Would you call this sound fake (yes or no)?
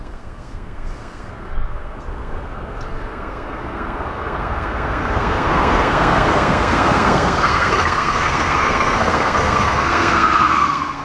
yes